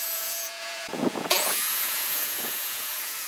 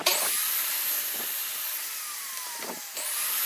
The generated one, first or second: first